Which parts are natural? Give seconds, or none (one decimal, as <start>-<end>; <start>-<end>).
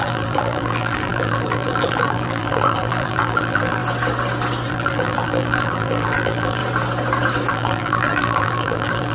3.8-4.7; 6.6-7.5